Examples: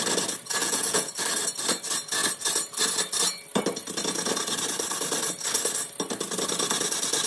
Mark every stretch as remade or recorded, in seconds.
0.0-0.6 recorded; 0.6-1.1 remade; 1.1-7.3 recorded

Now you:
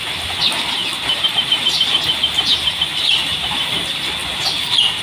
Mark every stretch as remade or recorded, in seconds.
0.0-0.8 recorded; 0.8-3.8 remade; 3.8-5.0 recorded

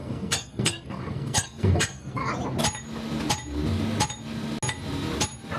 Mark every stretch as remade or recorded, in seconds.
0.0-2.2 remade; 2.2-5.6 recorded

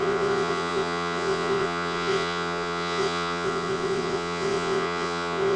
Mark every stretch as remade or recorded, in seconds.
0.0-5.6 remade